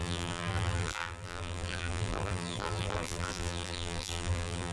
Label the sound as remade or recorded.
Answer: remade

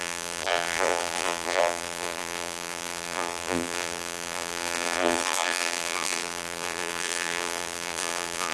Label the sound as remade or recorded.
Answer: remade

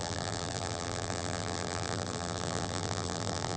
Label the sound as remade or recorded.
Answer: remade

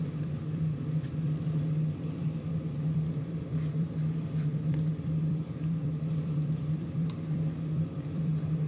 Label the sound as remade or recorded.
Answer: remade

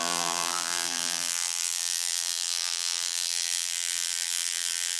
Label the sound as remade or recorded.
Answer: remade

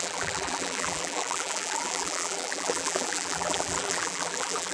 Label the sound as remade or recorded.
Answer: remade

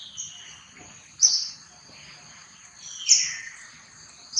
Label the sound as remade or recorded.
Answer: recorded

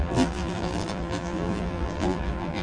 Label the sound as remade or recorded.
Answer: remade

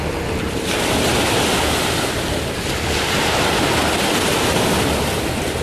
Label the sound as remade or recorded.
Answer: recorded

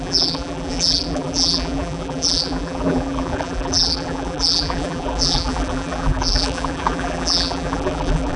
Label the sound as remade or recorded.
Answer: remade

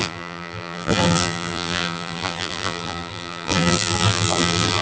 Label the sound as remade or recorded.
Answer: remade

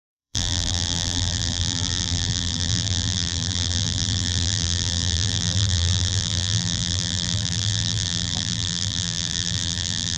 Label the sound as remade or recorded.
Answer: remade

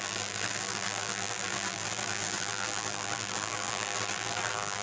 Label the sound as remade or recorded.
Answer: remade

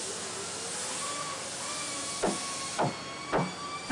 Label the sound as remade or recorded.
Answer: recorded